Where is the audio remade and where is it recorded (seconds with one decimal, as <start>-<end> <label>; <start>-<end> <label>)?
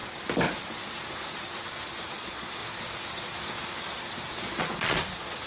0.0-2.1 recorded; 2.1-2.6 remade; 2.6-4.6 recorded; 4.6-5.5 remade